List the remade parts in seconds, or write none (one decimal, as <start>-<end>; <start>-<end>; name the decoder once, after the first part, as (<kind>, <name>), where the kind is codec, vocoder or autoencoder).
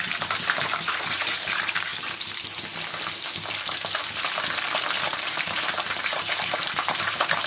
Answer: 0.0-1.9 (vocoder, BigVGAN v2); 5.2-7.5